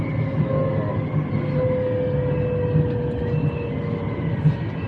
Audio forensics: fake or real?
real